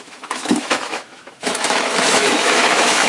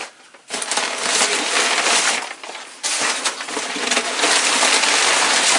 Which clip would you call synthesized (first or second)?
first